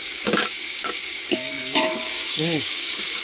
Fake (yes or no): yes